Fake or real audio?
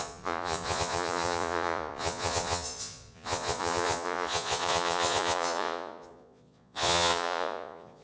fake